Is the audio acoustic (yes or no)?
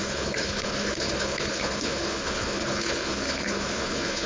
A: no